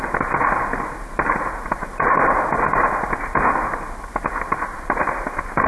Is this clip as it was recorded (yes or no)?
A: yes